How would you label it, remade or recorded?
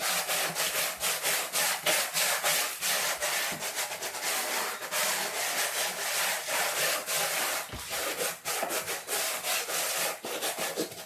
recorded